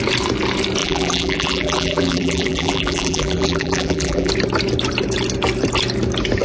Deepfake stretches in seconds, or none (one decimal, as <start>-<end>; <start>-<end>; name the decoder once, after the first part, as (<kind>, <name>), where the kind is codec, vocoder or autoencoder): 0.8-4.3 (vocoder, BigVGAN v2)